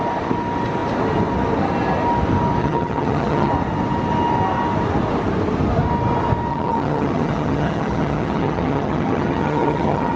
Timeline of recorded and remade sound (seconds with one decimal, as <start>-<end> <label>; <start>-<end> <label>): 0.0-2.6 recorded; 2.6-3.5 remade; 3.5-6.5 recorded; 6.5-10.2 remade